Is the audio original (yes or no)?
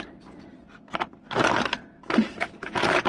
yes